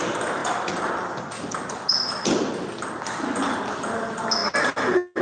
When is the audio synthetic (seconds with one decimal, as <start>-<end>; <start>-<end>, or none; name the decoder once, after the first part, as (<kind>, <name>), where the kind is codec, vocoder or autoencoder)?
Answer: none